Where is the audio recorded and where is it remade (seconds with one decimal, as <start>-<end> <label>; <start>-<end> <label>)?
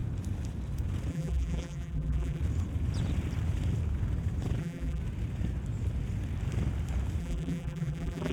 0.0-1.1 recorded; 1.1-2.4 remade; 2.4-4.6 recorded; 4.6-5.0 remade; 5.0-7.2 recorded; 7.2-8.3 remade